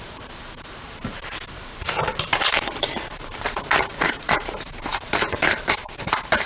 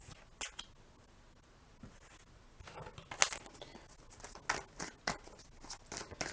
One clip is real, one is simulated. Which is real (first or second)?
second